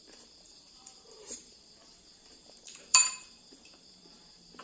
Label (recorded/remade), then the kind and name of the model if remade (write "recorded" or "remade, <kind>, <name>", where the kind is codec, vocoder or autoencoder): remade, vocoder, BigVGAN v2